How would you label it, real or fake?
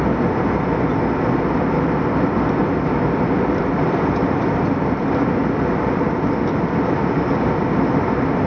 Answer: real